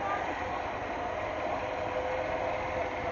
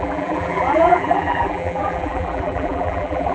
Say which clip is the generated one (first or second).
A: second